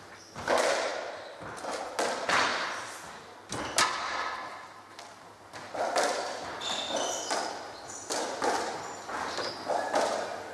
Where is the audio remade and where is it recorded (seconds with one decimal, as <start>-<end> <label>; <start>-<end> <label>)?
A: 0.0-10.5 recorded